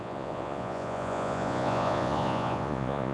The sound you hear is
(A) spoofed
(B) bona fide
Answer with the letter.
A